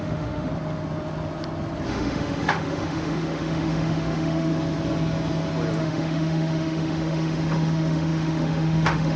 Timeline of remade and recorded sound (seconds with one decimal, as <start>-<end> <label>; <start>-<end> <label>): 0.0-0.5 remade; 0.5-1.9 recorded; 1.9-4.5 remade; 4.5-5.8 recorded; 5.8-9.2 remade